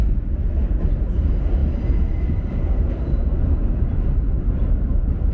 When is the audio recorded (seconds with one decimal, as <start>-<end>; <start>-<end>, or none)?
0.0-5.3